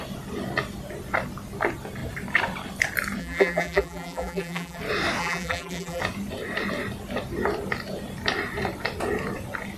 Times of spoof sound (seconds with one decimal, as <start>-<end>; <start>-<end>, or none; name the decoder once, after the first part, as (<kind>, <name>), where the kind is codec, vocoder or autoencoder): 3.2-4.8 (vocoder, BigVGAN v2); 5.2-6.0